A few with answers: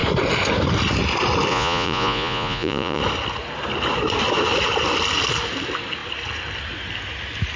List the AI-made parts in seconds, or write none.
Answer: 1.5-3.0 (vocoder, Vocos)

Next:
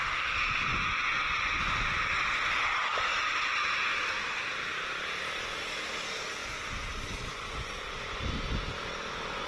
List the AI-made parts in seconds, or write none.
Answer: 0.7-1.8 (vocoder, Vocos); 6.4-8.2

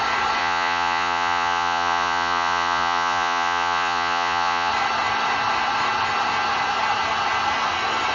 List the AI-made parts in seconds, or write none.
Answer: 0.4-4.7 (vocoder, Vocos)